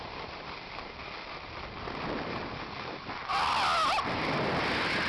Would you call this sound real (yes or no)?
yes